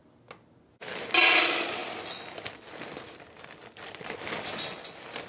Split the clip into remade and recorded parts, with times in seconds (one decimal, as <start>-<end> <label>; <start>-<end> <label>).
0.0-5.3 recorded